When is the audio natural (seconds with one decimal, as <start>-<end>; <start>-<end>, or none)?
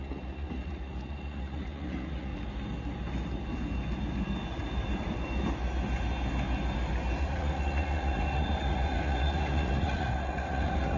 2.3-7.2